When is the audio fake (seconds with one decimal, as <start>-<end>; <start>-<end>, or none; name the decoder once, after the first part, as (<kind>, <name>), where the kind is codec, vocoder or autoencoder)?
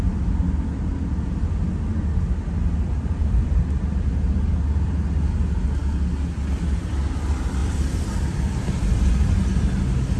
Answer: 3.2-4.5 (vocoder, BigVGAN v2); 7.6-9.1